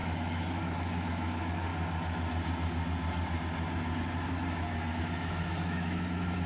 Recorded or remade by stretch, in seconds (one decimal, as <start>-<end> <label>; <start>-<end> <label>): 0.0-1.7 remade; 1.7-5.0 recorded; 5.0-6.5 remade